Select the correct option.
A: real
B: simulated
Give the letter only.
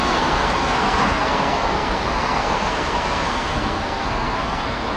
B